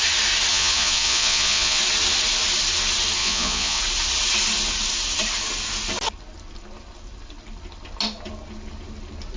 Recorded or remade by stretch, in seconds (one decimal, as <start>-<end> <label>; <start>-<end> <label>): 0.0-0.5 recorded; 0.5-1.8 remade; 1.8-3.2 recorded; 3.2-3.8 remade; 3.8-9.4 recorded